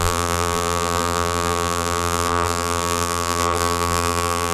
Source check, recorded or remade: remade